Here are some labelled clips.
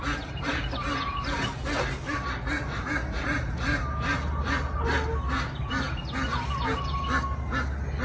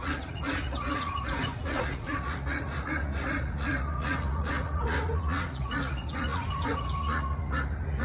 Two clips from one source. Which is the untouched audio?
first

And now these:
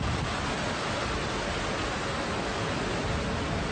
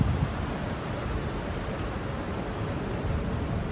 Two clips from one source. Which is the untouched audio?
first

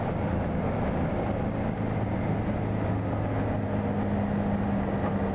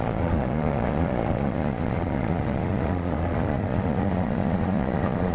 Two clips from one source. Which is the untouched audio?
first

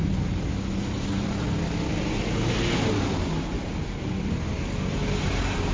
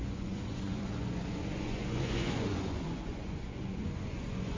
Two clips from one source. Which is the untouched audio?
first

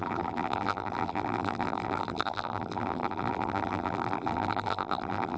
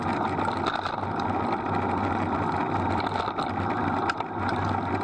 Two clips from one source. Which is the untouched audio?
second